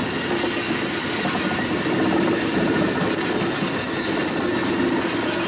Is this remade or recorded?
recorded